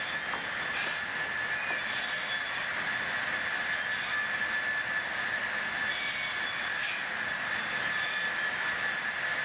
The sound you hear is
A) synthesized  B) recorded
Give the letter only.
B